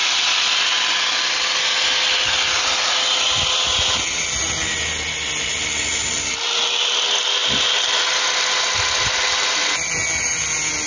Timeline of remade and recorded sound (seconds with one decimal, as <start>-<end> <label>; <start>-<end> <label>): 0.0-10.9 recorded